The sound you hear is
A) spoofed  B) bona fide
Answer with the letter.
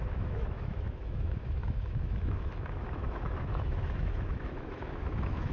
A